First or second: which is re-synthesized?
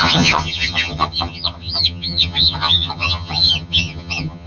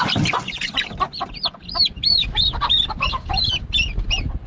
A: first